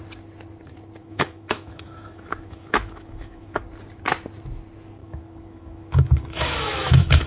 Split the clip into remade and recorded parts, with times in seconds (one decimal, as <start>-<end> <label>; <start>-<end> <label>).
0.0-1.0 recorded; 1.0-3.6 remade; 3.6-5.0 recorded; 5.0-7.3 remade